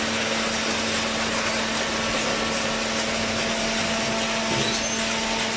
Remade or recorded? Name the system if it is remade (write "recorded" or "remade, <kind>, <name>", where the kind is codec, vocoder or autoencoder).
recorded